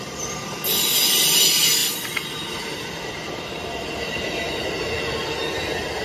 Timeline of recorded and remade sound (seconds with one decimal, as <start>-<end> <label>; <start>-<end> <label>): 0.0-1.8 recorded; 1.8-4.2 remade; 4.2-6.0 recorded